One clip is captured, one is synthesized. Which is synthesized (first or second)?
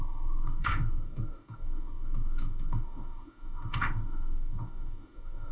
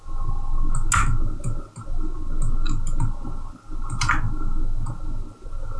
first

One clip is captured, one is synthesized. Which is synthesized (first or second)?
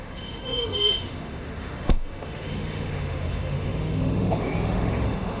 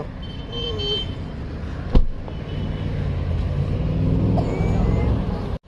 first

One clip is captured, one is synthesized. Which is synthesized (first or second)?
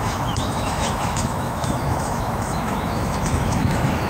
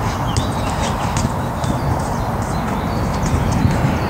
first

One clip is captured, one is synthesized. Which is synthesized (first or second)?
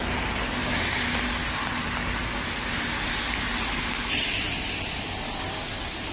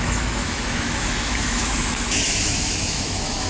second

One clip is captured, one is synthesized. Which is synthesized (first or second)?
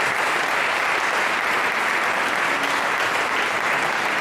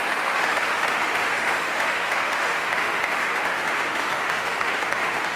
second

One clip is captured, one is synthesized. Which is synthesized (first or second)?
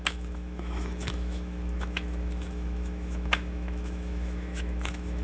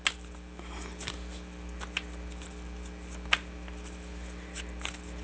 first